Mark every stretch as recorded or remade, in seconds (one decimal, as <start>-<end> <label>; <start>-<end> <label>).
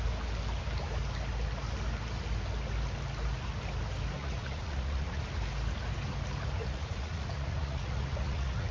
0.0-4.2 recorded; 4.2-5.2 remade; 5.2-6.6 recorded; 6.6-8.7 remade